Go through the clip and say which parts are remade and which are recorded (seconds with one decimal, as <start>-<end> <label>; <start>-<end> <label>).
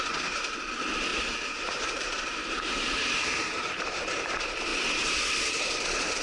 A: 0.0-1.1 recorded; 1.1-4.1 remade; 4.1-6.2 recorded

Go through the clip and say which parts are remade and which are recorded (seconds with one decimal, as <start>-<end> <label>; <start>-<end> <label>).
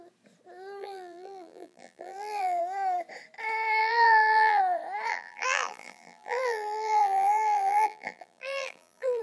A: 0.0-0.8 recorded; 0.8-2.6 remade; 2.6-3.8 recorded; 3.8-4.6 remade; 4.6-5.1 recorded; 5.1-9.2 remade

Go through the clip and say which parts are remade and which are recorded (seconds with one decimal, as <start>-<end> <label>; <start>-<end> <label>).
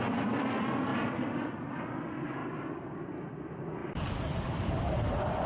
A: 0.0-3.8 recorded; 3.8-5.1 remade; 5.1-5.5 recorded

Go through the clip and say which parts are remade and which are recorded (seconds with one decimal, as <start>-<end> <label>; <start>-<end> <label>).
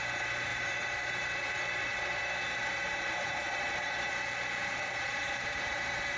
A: 0.0-0.5 recorded; 0.5-2.2 remade; 2.2-2.6 recorded; 2.6-4.1 remade; 4.1-4.6 recorded; 4.6-6.2 remade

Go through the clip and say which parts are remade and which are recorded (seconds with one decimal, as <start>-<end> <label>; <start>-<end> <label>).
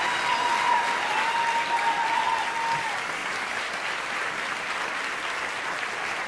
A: 0.0-3.2 recorded; 3.2-6.3 remade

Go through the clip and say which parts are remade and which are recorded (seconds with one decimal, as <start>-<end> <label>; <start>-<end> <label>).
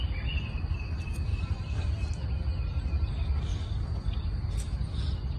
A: 0.0-1.3 recorded; 1.3-1.9 remade; 1.9-5.4 recorded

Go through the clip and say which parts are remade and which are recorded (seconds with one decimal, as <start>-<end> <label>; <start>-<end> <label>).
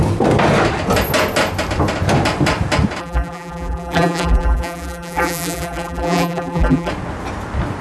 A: 0.0-3.0 recorded; 3.0-6.9 remade; 6.9-7.8 recorded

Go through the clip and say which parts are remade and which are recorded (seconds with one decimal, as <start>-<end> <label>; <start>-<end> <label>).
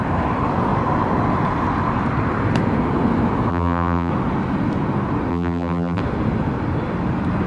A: 0.0-3.5 recorded; 3.5-4.1 remade; 4.1-5.3 recorded; 5.3-6.0 remade; 6.0-7.5 recorded